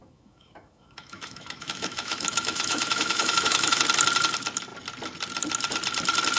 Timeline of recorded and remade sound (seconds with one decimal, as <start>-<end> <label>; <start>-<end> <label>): 0.0-3.8 remade; 3.8-6.4 recorded